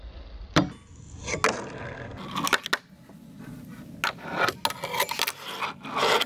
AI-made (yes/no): no